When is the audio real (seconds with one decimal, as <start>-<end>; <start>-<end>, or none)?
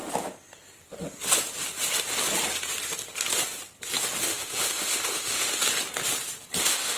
0.0-4.2; 5.6-6.6